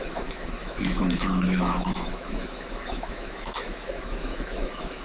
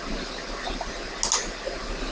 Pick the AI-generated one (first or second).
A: first